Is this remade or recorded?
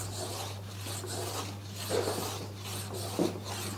recorded